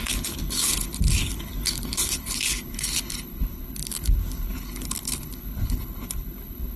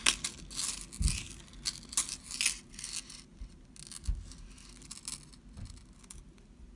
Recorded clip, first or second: second